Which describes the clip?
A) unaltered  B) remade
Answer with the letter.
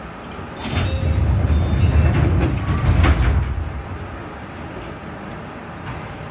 A